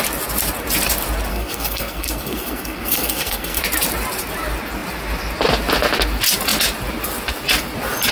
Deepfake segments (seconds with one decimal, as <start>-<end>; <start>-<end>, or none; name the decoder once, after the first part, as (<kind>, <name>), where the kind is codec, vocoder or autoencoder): 1.3-3.6 (codec, SNAC)